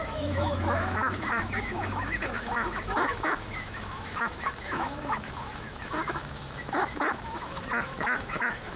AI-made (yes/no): yes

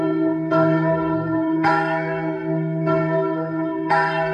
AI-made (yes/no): yes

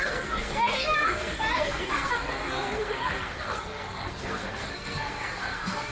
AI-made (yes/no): yes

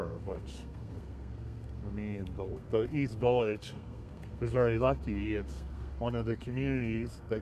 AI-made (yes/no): yes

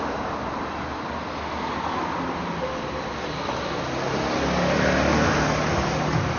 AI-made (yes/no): no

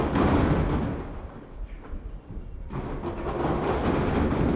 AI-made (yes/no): no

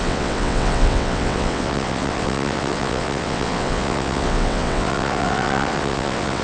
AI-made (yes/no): yes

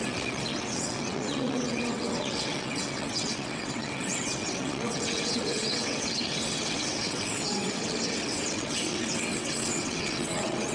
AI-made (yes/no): yes